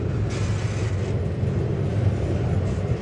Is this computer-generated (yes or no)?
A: no